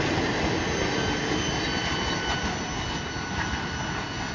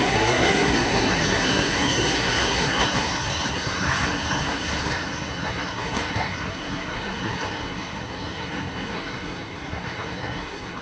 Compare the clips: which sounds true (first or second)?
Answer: first